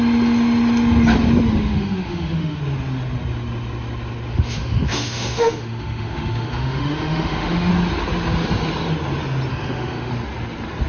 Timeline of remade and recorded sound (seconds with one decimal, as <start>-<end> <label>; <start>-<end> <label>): 0.0-1.5 recorded; 1.5-2.6 remade; 2.6-4.3 recorded; 4.3-7.7 remade; 7.7-9.5 recorded; 9.5-10.1 remade; 10.1-10.9 recorded